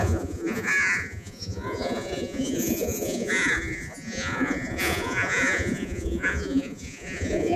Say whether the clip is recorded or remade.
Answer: remade